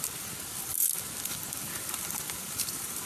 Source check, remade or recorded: remade